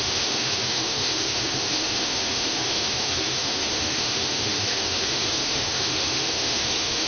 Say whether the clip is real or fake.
fake